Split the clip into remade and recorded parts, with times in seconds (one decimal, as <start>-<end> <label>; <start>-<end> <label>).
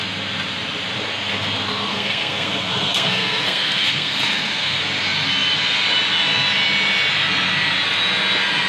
0.0-1.9 recorded; 1.9-4.8 remade; 4.8-8.7 recorded